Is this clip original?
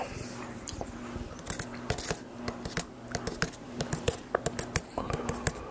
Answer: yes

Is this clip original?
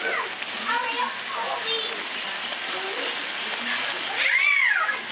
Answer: yes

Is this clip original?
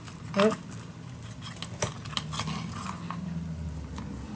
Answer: yes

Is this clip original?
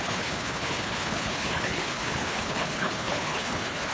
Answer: no